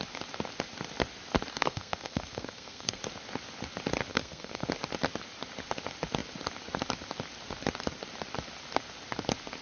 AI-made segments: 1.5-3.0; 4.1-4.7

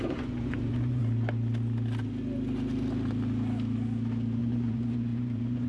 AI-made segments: 0.0-1.0; 4.4-5.7

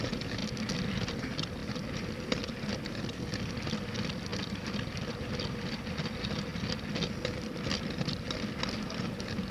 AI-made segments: 4.3-5.2

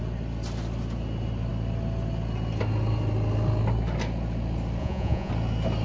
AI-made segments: 4.8-5.3

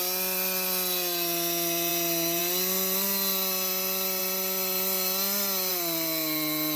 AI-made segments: none

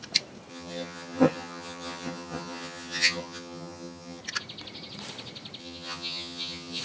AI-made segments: 0.5-4.2; 5.6-6.8

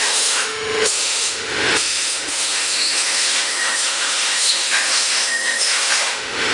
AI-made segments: 0.0-6.5

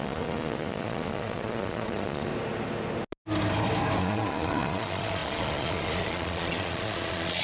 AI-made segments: 0.0-2.3; 4.0-7.4